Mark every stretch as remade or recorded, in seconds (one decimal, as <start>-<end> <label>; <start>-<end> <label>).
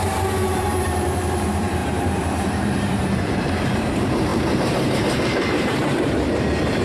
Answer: 0.0-6.8 remade